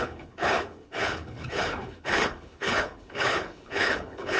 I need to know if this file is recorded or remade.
remade